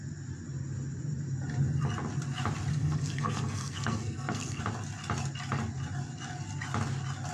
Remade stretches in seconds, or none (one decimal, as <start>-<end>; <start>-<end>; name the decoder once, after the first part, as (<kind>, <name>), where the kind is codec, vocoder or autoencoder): 2.7-4.6 (codec, SNAC)